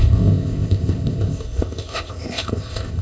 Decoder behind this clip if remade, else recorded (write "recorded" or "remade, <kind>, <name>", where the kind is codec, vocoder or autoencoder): remade, codec, ZipCodec